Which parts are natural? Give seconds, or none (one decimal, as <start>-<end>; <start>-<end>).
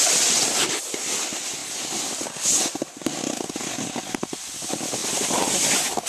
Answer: 0.0-6.1